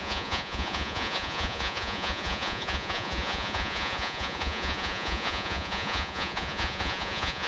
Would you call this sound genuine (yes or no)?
no